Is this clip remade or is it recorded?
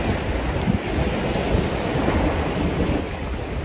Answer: recorded